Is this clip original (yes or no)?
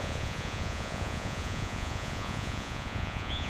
no